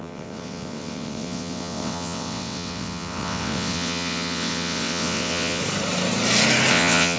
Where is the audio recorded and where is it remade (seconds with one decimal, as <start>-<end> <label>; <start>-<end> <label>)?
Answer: 0.0-5.6 remade; 5.6-6.7 recorded; 6.7-7.2 remade